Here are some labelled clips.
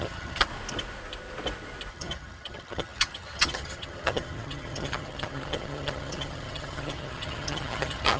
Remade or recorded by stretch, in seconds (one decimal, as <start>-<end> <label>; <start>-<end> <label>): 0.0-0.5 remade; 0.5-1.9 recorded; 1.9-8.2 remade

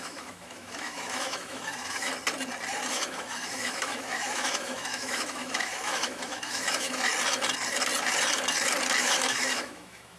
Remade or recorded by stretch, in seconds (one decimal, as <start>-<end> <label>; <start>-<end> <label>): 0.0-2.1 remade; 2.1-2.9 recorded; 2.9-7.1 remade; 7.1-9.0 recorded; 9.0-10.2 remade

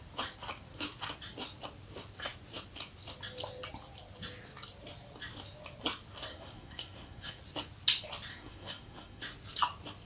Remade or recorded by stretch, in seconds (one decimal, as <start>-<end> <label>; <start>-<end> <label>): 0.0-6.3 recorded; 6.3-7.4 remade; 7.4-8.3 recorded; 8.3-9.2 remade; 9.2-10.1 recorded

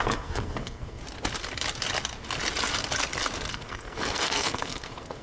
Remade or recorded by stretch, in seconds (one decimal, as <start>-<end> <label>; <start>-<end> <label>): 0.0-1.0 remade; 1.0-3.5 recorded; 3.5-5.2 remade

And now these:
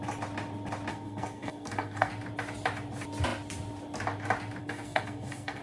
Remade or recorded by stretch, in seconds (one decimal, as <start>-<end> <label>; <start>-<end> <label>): 0.0-0.9 recorded; 0.9-2.1 remade; 2.1-4.6 recorded; 4.6-5.6 remade

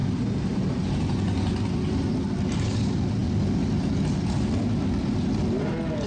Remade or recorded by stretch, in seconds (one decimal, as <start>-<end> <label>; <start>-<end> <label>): 0.0-6.1 recorded